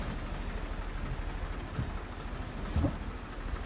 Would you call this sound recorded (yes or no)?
yes